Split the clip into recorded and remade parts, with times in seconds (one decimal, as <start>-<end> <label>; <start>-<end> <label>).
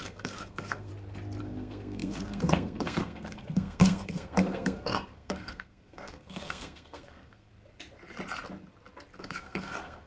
0.0-0.9 remade; 0.9-1.4 recorded; 1.4-7.5 remade; 7.5-9.2 recorded; 9.2-10.1 remade